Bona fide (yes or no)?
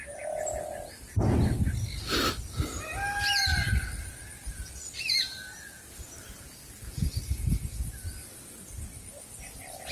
yes